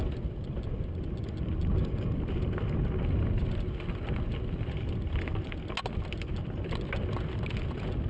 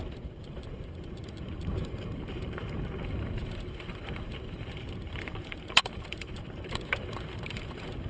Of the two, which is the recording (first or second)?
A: first